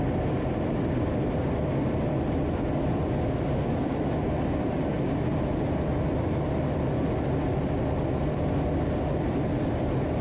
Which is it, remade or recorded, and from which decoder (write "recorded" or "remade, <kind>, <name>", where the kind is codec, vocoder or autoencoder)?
recorded